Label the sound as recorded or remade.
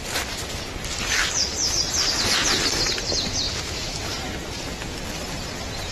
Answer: recorded